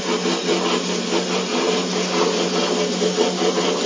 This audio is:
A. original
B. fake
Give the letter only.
A